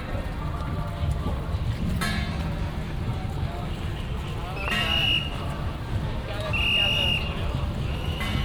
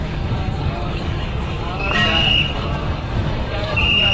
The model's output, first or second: second